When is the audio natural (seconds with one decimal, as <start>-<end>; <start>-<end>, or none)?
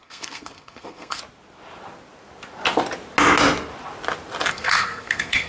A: 1.2-4.5